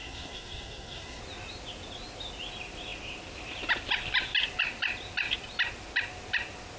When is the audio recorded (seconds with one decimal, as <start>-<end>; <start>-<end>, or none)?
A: 1.2-6.8